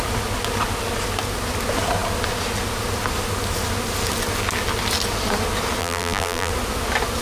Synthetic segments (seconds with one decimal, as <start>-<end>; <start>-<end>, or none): 5.8-6.5